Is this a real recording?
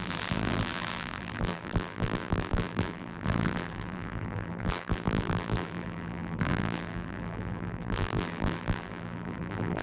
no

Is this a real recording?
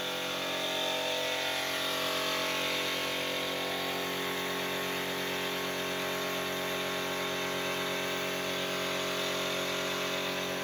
yes